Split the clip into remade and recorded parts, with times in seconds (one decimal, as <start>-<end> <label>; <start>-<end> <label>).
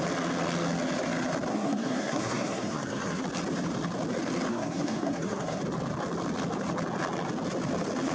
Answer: 0.0-1.5 recorded; 1.5-3.2 remade; 3.2-4.5 recorded; 4.5-5.6 remade; 5.6-8.1 recorded